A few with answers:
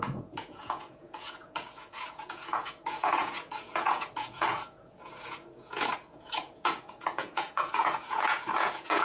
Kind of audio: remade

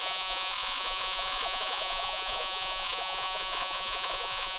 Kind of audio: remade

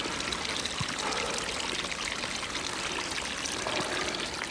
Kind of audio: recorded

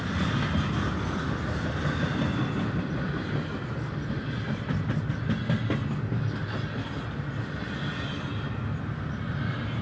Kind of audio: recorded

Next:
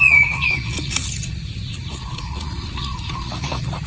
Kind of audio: remade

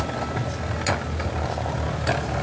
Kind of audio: recorded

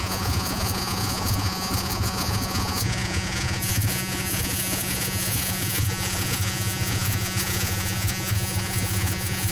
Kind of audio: remade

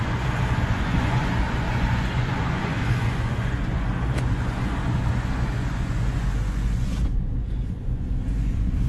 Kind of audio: remade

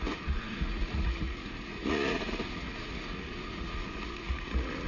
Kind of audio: remade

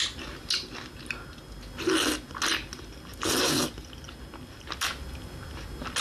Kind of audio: recorded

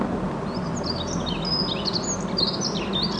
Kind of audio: recorded